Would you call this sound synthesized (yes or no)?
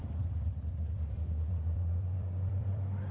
yes